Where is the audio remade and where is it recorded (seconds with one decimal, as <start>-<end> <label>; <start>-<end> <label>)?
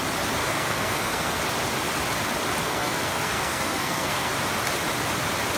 0.0-0.4 recorded; 0.4-1.4 remade; 1.4-2.6 recorded; 2.6-4.3 remade; 4.3-5.6 recorded